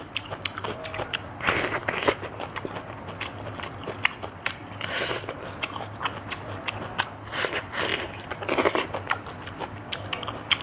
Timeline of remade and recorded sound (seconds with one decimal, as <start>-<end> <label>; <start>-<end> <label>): 0.0-10.6 recorded